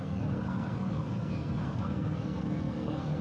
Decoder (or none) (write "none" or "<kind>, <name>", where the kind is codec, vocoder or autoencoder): codec, SNAC